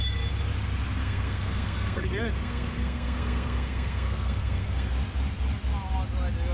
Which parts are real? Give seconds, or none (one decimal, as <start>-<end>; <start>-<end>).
0.0-1.0; 4.9-6.5